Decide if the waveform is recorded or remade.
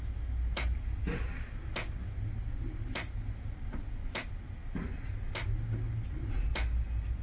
recorded